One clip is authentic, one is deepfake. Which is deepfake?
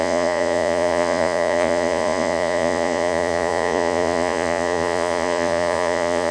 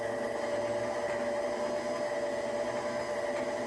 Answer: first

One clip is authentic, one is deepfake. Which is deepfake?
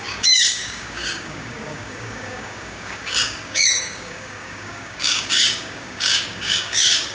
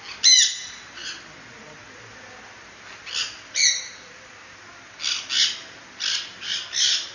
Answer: first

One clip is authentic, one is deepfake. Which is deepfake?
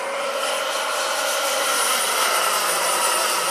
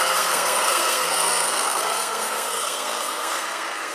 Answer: second